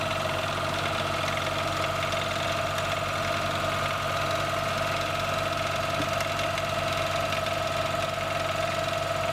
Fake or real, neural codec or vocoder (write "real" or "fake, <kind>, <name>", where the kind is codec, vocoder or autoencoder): real